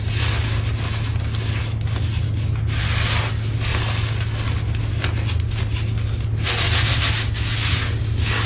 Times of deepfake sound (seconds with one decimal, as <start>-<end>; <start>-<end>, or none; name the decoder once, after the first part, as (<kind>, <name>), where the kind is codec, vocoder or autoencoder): none